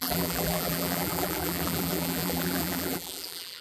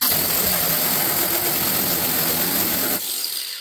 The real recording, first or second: second